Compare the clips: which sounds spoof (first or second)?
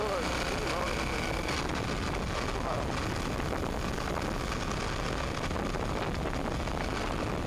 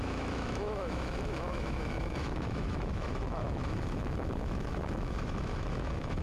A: second